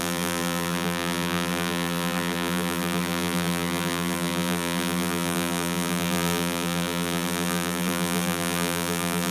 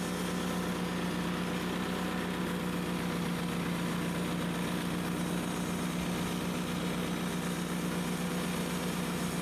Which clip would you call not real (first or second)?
first